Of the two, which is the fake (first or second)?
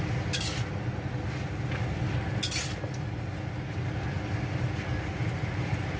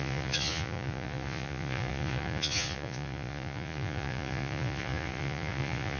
second